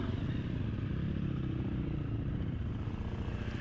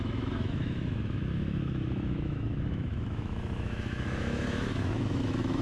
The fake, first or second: second